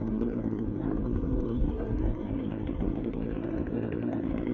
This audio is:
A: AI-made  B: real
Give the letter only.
A